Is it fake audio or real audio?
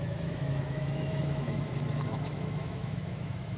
fake